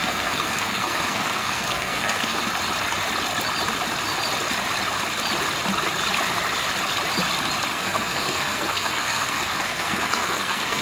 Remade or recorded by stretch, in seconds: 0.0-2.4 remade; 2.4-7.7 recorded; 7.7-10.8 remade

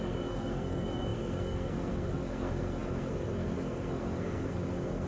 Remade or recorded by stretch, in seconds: 0.0-5.1 remade

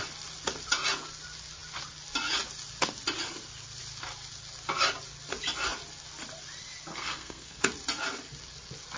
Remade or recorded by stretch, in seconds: 0.0-6.9 recorded; 6.9-7.6 remade; 7.6-9.0 recorded

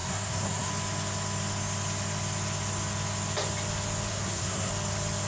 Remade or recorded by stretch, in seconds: 0.0-0.7 remade; 0.7-4.1 recorded; 4.1-4.7 remade; 4.7-5.3 recorded

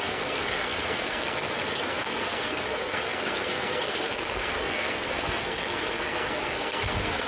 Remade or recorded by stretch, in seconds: 0.0-7.3 remade

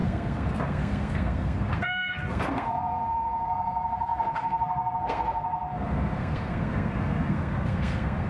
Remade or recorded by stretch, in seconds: 0.0-8.3 remade